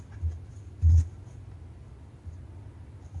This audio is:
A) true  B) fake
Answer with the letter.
A